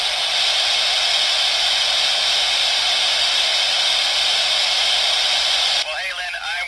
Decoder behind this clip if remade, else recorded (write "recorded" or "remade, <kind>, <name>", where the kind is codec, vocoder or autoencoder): recorded